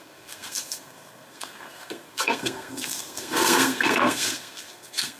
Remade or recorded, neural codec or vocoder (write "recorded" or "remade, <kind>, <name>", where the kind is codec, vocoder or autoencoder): remade, codec, SNAC